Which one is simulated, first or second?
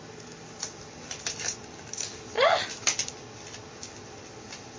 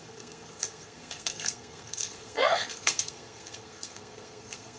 second